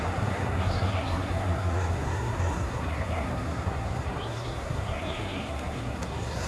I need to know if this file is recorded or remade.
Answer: remade